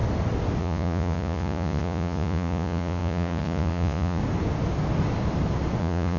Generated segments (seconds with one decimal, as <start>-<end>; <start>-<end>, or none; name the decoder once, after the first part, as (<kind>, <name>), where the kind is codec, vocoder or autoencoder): 0.6-4.2 (vocoder, Vocos); 5.8-6.2